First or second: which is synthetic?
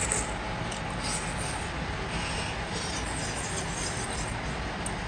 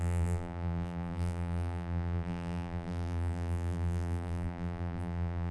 second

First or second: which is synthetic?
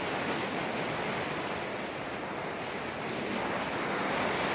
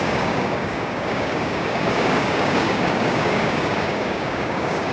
second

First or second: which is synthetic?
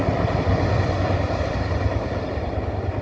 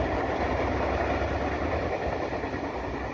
first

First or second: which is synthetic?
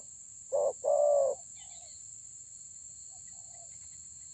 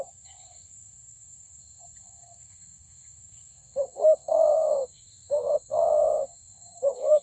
second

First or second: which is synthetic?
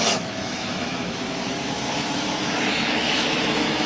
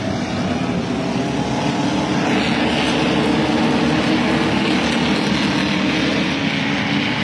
first